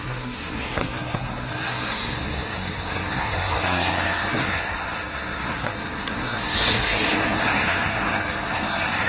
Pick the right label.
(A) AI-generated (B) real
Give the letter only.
A